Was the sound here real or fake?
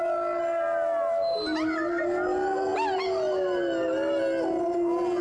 real